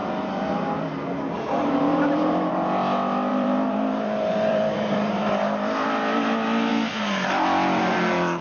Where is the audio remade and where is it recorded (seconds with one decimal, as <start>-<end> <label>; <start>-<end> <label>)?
0.0-2.5 remade; 2.5-3.3 recorded; 3.3-6.7 remade; 6.7-8.4 recorded